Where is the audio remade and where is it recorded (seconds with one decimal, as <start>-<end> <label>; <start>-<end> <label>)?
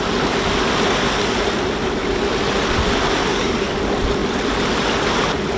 0.0-3.3 recorded; 3.3-3.8 remade; 3.8-5.6 recorded